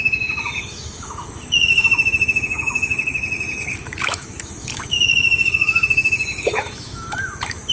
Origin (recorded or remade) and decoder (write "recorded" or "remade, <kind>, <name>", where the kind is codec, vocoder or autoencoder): remade, autoencoder, DAC-VAE